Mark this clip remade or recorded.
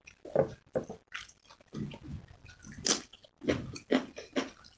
recorded